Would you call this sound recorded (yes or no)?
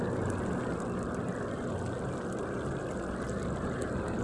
yes